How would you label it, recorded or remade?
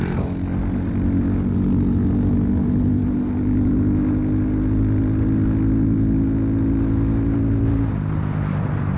recorded